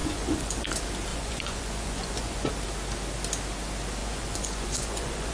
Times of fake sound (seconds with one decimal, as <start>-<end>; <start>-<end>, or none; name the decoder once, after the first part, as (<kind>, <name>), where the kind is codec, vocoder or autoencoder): 0.0-0.7 (vocoder, Vocos); 1.1-2.5; 4.0-5.3